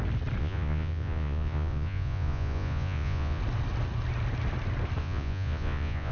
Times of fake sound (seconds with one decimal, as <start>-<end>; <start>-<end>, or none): 0.4-3.4; 5.0-6.1